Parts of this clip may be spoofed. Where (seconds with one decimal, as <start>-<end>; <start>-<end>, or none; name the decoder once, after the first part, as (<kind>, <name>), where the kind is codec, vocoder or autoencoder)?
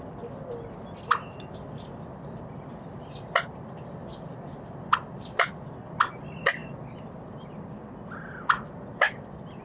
6.6-8.3 (vocoder, BigVGAN v2)